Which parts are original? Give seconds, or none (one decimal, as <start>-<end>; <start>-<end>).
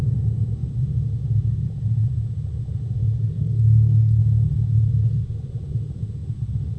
0.0-3.4; 4.2-6.8